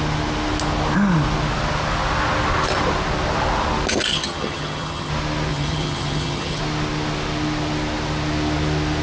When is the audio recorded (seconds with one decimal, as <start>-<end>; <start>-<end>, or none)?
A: 0.0-4.1; 5.1-5.5; 6.6-9.0